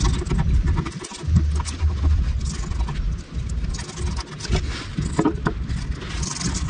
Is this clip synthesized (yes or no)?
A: no